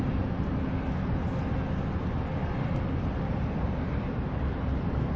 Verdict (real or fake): real